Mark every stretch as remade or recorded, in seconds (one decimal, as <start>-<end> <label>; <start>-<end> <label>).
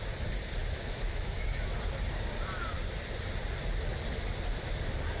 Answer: 0.0-0.6 recorded; 0.6-1.7 remade; 1.7-5.2 recorded